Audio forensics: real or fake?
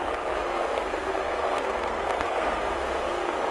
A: fake